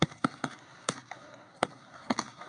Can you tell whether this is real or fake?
fake